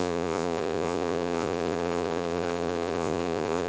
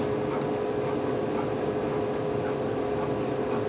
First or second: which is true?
second